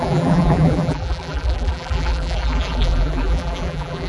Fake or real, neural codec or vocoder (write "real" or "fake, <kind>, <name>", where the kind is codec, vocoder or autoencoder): fake, vocoder, BigVGAN v2